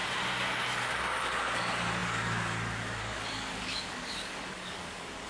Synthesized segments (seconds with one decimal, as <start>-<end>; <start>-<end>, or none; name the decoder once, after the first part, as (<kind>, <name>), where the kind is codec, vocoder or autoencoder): 0.8-5.3 (codec, DAC)